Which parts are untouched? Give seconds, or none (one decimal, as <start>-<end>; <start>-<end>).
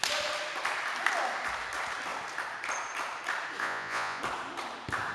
0.0-3.6; 4.2-5.1